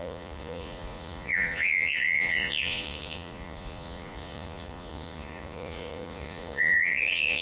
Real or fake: fake